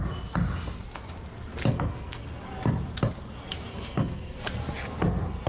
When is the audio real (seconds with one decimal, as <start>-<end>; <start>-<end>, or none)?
0.0-1.7; 2.2-3.7; 4.4-5.5